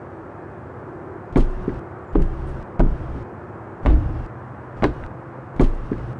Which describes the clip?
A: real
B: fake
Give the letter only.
A